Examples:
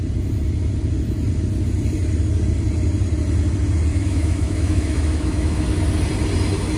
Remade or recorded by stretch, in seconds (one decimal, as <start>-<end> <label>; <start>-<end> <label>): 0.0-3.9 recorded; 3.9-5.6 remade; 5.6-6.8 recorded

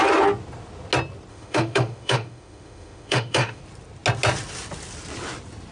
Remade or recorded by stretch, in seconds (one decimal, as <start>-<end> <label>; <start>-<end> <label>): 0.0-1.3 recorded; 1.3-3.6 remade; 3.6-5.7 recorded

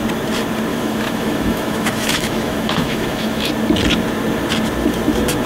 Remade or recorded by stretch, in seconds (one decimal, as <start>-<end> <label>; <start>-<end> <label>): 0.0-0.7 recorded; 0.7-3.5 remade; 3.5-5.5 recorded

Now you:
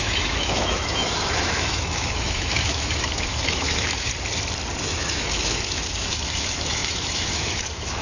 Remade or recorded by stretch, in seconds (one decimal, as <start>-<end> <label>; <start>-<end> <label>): 0.0-4.1 remade; 4.1-4.8 recorded; 4.8-8.0 remade

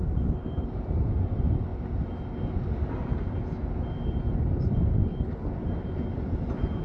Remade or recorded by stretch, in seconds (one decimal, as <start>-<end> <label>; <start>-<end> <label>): 0.0-6.8 recorded